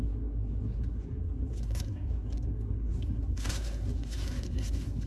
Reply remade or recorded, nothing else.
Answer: remade